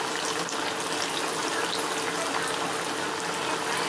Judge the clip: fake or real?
real